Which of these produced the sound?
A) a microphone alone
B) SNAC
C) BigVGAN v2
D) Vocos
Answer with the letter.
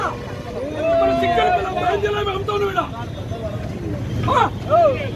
A